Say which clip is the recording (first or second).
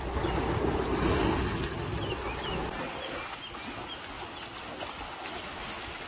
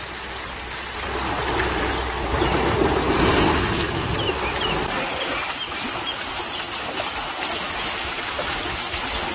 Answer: first